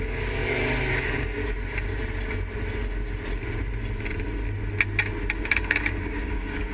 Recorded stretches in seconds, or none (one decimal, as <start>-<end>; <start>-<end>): 0.4-0.9; 1.4-5.4